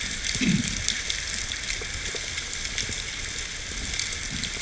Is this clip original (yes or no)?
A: yes